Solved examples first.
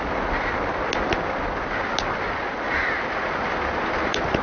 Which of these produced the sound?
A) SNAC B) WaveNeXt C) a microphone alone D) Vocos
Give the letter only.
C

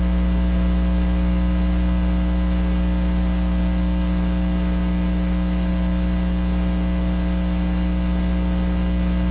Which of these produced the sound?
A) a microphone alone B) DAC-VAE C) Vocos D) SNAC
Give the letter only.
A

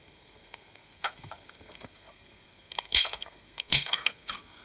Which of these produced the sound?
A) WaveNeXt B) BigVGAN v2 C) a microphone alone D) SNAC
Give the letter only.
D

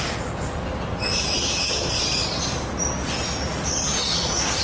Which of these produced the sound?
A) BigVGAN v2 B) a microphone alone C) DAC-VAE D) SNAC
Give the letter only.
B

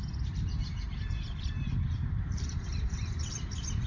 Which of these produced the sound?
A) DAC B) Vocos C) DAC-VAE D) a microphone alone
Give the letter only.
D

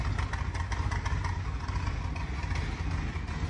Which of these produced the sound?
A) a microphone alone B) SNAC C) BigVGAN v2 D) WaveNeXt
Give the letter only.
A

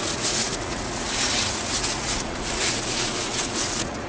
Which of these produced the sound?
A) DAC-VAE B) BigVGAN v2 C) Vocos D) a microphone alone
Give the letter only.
C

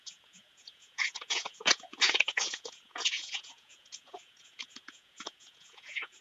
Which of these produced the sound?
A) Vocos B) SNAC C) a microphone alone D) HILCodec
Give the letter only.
A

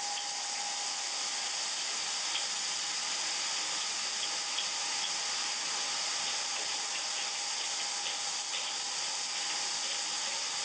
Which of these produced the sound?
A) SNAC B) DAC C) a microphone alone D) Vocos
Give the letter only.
C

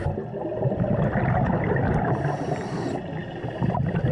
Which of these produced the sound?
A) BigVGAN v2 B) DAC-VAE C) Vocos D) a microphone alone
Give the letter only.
D